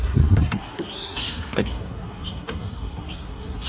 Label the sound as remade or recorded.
remade